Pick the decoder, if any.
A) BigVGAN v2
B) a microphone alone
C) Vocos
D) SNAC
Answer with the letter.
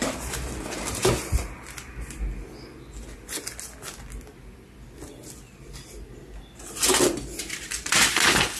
B